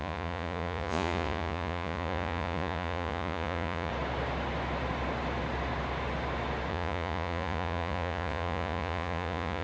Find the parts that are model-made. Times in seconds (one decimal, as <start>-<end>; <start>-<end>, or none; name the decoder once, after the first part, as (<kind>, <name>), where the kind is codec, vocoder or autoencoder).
0.0-3.9 (vocoder, Vocos); 6.7-9.6